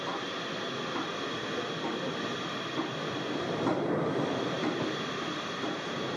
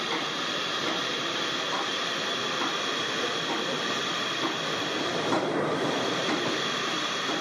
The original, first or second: first